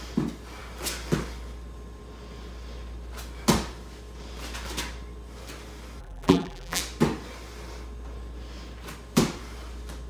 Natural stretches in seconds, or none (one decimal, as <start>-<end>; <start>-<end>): 0.0-6.0; 6.8-10.1